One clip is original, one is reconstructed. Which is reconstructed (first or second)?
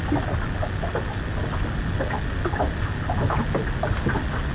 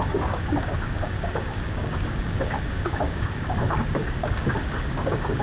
second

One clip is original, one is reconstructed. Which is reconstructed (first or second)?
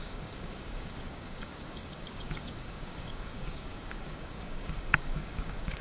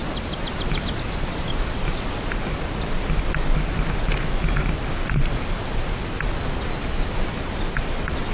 first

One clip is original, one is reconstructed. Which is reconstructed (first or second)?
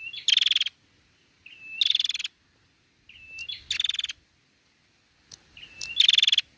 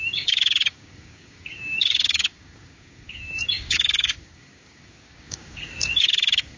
second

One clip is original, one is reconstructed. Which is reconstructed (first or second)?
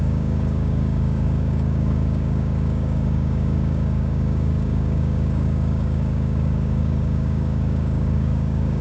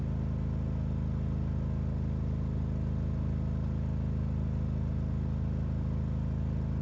first